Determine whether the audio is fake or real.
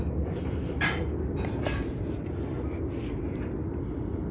real